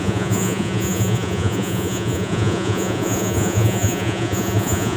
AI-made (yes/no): yes